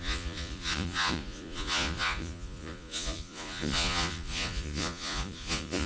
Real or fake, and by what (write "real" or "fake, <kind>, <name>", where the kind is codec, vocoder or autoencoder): fake, vocoder, Vocos